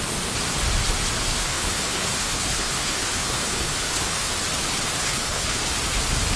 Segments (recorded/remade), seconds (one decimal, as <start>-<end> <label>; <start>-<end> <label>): 0.0-1.3 recorded; 1.3-4.3 remade; 4.3-5.0 recorded; 5.0-5.6 remade; 5.6-6.4 recorded